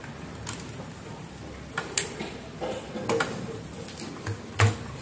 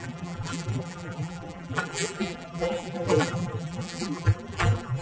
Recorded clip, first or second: first